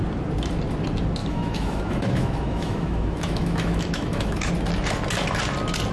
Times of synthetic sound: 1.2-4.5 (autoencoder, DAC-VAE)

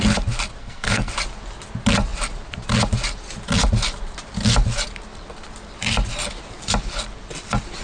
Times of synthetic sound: 0.6-1.1 (codec, SNAC)

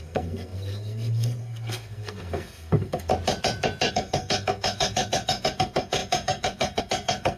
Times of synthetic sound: 0.0-3.1 (codec, SNAC); 3.9-7.4

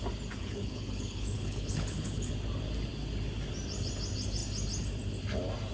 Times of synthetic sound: 0.4-2.3 (codec, HILCodec)